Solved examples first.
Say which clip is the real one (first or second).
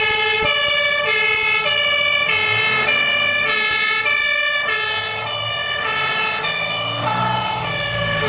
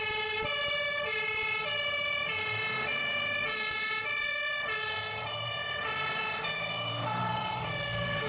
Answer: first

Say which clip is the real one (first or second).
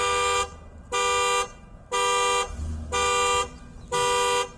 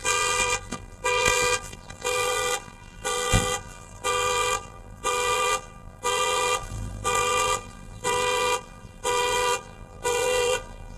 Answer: first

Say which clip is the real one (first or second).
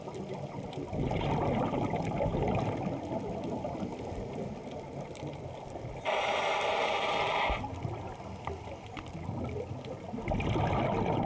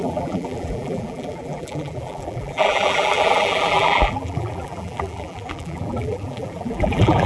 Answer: first